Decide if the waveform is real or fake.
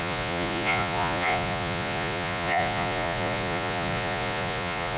fake